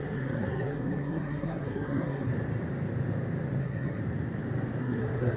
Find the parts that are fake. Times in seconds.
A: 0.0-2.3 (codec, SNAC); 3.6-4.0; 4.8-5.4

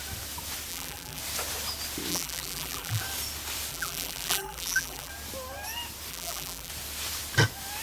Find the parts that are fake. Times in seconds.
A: 0.7-1.2 (vocoder, BigVGAN v2); 2.1-3.0; 3.7-5.1; 6.1-6.7

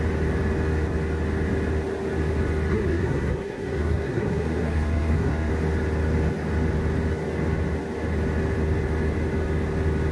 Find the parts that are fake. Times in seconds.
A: 2.7-5.5 (codec, SNAC)

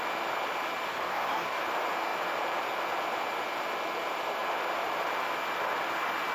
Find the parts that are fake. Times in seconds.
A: 0.9-1.6 (codec, DAC)